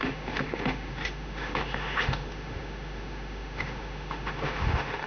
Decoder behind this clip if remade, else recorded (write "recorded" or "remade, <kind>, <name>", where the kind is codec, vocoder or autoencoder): remade, autoencoder, DAC-VAE